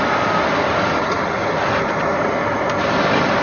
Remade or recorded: recorded